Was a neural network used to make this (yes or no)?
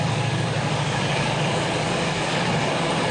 yes